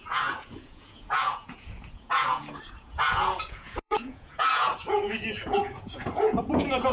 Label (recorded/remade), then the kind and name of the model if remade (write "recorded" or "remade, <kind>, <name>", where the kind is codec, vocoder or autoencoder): remade, vocoder, Vocos